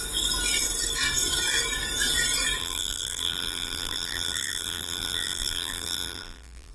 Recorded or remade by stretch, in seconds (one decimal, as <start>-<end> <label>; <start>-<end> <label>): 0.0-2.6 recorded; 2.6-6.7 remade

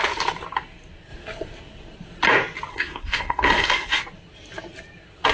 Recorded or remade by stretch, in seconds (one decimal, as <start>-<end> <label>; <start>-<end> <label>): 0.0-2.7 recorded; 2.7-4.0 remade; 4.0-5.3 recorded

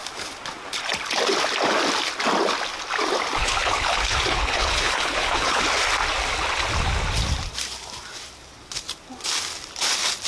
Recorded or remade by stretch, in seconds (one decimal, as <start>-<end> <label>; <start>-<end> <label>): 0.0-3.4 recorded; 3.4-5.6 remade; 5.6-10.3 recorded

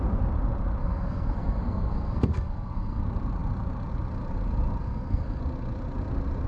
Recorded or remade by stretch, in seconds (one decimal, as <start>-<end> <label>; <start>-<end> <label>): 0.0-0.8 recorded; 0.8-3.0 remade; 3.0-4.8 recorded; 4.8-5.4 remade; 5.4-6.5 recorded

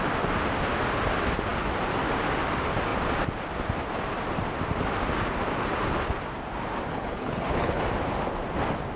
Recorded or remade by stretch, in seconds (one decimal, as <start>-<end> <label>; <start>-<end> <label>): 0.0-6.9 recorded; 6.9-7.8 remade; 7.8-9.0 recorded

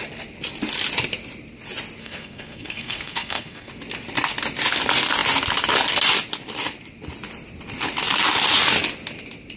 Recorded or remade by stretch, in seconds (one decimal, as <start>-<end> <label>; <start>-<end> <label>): 0.0-2.0 recorded; 2.0-3.7 remade; 3.7-9.6 recorded

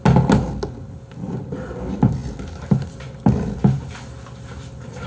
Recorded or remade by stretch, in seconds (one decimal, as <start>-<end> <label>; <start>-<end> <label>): 0.0-5.1 recorded

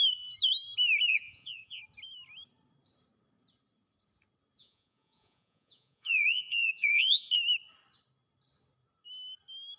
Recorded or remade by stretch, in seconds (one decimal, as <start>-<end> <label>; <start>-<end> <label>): 0.0-1.1 recorded; 1.1-1.8 remade; 1.8-4.6 recorded; 4.6-7.3 remade; 7.3-9.8 recorded